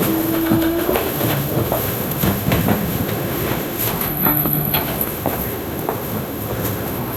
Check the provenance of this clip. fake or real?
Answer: fake